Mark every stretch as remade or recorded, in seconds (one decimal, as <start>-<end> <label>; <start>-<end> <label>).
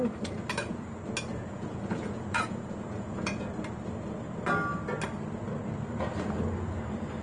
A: 0.0-1.3 recorded; 1.3-3.5 remade; 3.5-7.2 recorded